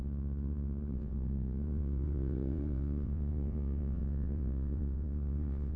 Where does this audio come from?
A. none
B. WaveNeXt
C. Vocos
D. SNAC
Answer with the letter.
B